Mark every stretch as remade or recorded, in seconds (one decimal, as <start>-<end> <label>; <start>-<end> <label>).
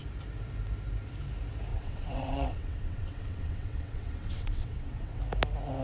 0.0-1.7 recorded; 1.7-5.2 remade; 5.2-5.8 recorded